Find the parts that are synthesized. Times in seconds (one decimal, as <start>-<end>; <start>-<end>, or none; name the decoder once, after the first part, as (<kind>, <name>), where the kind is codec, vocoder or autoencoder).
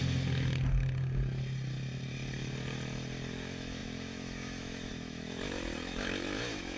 3.3-6.8 (autoencoder, DAC-VAE)